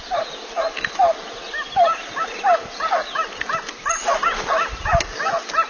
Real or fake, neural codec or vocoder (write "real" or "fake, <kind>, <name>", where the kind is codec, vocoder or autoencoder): real